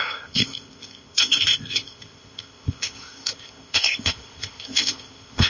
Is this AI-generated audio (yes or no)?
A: yes